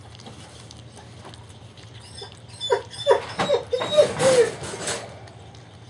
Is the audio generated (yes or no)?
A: no